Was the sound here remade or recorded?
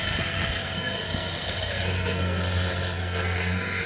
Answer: remade